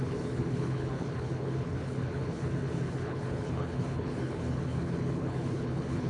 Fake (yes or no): yes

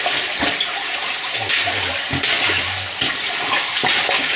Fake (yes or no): no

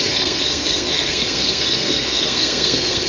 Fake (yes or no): yes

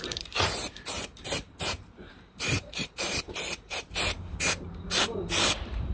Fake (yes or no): yes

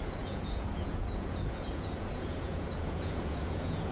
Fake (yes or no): yes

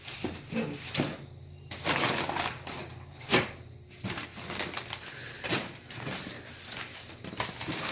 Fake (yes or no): no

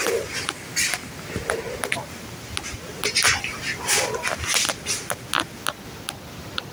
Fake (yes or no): no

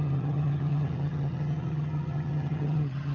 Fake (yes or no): yes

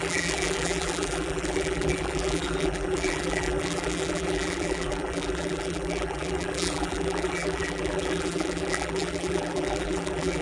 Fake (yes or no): yes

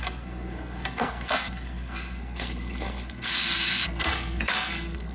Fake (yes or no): yes